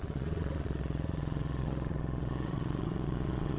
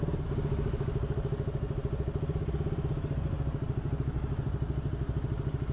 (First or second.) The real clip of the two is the second